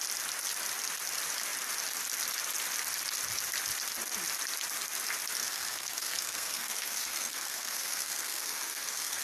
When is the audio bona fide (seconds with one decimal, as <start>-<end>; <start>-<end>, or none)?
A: 0.0-5.4